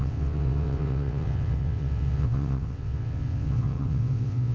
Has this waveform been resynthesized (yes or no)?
yes